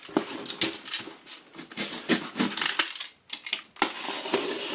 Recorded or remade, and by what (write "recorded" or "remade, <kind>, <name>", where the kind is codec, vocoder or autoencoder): recorded